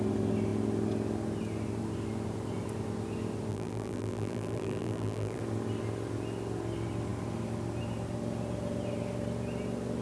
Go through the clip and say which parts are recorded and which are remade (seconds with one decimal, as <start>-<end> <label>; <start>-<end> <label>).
0.0-3.5 recorded; 3.5-5.4 remade; 5.4-10.0 recorded